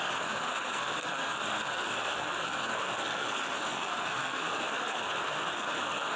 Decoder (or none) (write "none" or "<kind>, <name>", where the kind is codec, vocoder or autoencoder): codec, SNAC